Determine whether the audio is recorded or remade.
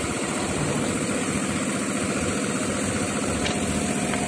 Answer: recorded